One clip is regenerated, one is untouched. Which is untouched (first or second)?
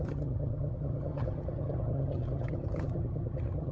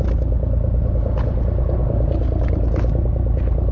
second